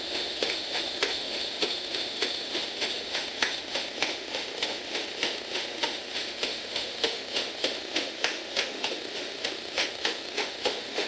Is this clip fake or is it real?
fake